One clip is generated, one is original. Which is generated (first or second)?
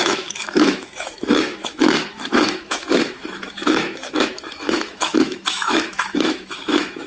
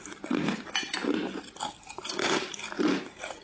first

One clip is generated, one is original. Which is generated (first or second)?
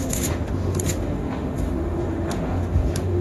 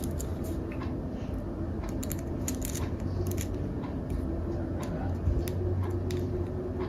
first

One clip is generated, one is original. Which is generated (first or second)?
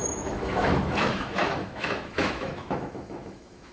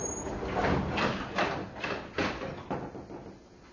first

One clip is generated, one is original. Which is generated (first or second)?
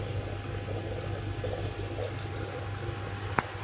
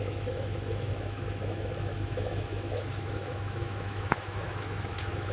second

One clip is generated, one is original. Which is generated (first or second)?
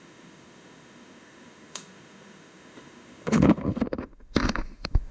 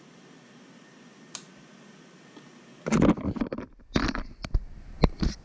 first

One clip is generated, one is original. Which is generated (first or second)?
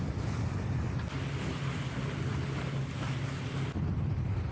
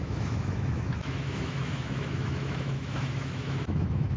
second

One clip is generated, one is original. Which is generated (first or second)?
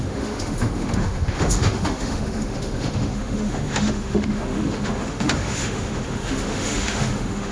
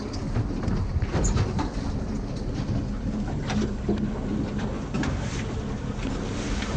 first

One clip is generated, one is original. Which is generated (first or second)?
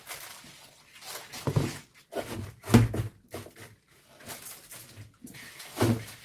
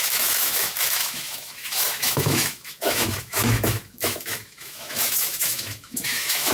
second